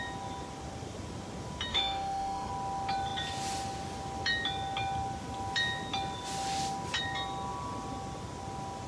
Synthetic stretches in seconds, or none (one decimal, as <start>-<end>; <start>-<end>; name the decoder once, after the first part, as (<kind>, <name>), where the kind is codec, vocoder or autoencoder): 1.7-2.5 (autoencoder, DAC-VAE)